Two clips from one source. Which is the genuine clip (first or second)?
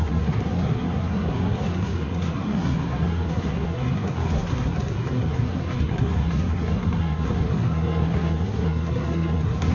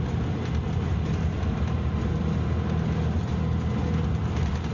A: second